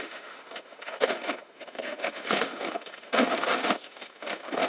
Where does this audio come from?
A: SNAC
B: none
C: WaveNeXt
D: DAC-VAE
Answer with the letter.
D